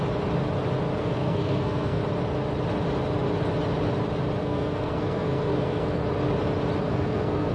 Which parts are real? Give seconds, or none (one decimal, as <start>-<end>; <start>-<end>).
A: 0.0-1.0; 2.0-4.4; 6.0-6.8